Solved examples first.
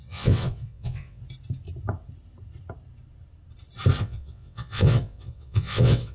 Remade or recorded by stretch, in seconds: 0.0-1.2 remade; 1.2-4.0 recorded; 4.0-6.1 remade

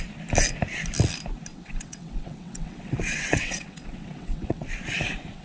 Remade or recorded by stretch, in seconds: 0.0-1.5 recorded; 1.5-4.7 remade; 4.7-5.4 recorded

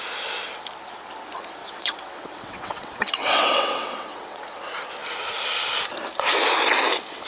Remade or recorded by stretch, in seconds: 0.0-1.6 recorded; 1.6-4.4 remade; 4.4-7.3 recorded

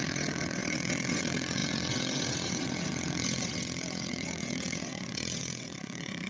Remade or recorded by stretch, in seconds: 0.0-6.3 remade

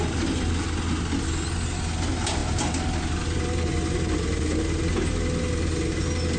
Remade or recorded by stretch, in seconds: 0.0-6.4 recorded

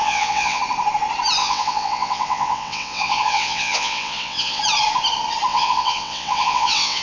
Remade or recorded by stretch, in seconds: 0.0-0.6 remade; 0.6-1.4 recorded; 1.4-4.6 remade; 4.6-5.5 recorded; 5.5-7.0 remade